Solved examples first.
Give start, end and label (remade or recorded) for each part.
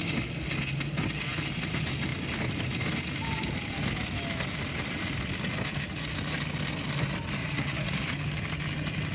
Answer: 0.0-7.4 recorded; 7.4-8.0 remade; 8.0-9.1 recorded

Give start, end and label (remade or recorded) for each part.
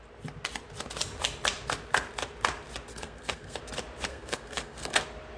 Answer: 0.0-2.9 recorded; 2.9-3.6 remade; 3.6-4.1 recorded; 4.1-5.0 remade; 5.0-5.4 recorded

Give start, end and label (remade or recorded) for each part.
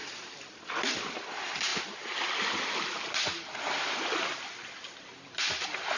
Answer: 0.0-0.5 remade; 0.5-6.0 recorded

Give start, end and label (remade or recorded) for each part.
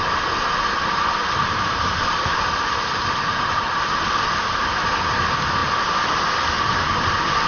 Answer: 0.0-1.2 recorded; 1.2-3.6 remade; 3.6-7.5 recorded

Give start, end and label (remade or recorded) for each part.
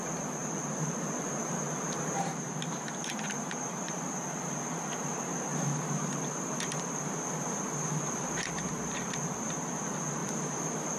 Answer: 0.0-0.4 recorded; 0.4-4.0 remade; 4.0-5.5 recorded; 5.5-6.1 remade; 6.1-10.2 recorded; 10.2-11.0 remade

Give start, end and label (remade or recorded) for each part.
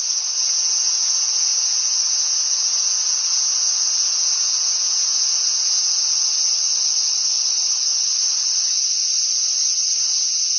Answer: 0.0-6.0 remade; 6.0-10.1 recorded; 10.1-10.6 remade